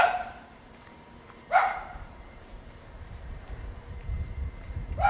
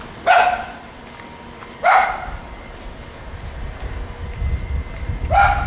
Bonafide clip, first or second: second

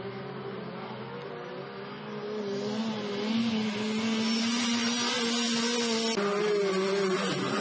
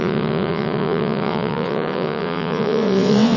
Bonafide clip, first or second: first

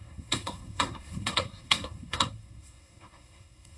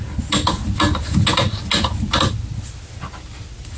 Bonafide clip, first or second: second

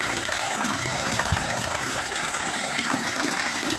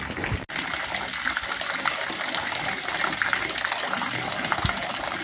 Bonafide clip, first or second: second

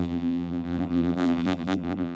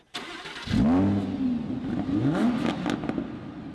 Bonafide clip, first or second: second